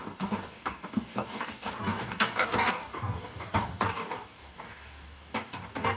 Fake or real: fake